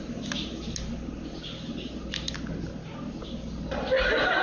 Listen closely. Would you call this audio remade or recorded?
recorded